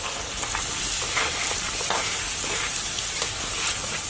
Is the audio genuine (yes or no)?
yes